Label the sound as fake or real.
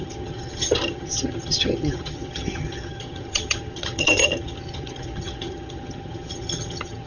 fake